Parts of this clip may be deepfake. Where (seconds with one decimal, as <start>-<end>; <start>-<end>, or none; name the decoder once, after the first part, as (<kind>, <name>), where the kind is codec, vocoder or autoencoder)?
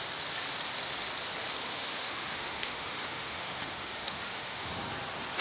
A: 1.7-4.7 (autoencoder, DAC-VAE)